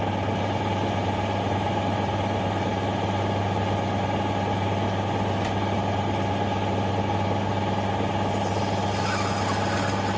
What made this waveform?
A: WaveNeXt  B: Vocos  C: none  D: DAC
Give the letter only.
C